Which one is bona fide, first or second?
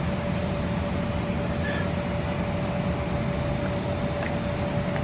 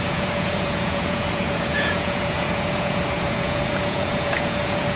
first